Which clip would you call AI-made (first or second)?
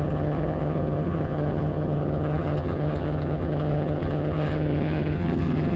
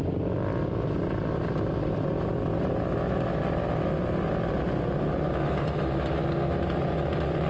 first